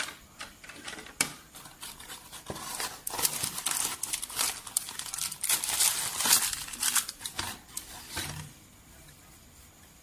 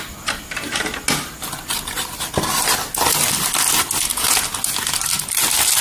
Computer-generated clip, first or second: first